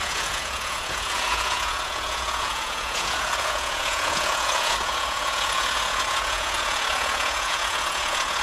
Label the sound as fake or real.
fake